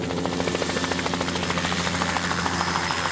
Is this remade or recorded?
recorded